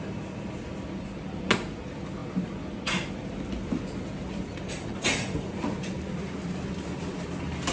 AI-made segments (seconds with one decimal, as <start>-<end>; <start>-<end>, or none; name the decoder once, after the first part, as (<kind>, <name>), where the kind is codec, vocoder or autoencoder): none